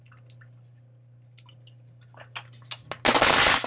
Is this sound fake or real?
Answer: real